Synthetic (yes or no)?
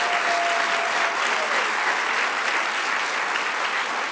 no